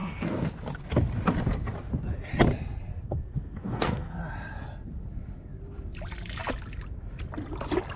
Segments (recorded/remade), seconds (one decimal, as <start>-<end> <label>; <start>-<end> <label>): 0.0-0.5 remade; 0.5-2.9 recorded; 2.9-4.2 remade; 4.2-8.0 recorded